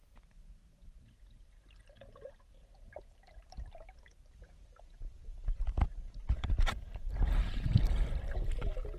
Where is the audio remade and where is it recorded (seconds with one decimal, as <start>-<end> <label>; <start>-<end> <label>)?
0.0-2.5 recorded; 2.5-7.1 remade; 7.1-9.0 recorded